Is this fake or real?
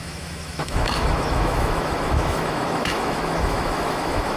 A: fake